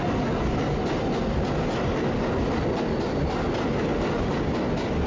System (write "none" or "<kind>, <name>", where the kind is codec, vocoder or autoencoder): none